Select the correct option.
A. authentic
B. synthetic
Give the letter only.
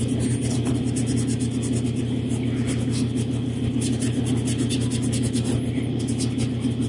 A